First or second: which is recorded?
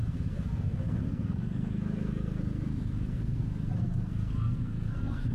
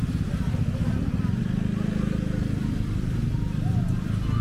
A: second